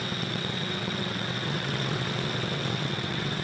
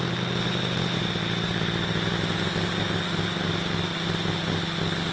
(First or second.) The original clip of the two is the second